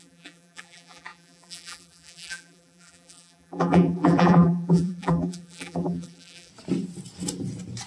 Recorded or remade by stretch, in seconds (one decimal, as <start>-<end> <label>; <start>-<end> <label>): 0.0-6.5 remade; 6.5-7.9 recorded